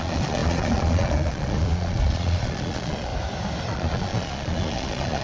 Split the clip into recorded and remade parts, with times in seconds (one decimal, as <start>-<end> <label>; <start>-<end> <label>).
0.0-3.1 remade; 3.1-3.7 recorded; 3.7-5.2 remade